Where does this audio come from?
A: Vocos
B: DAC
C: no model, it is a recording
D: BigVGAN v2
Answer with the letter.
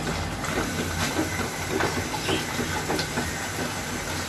C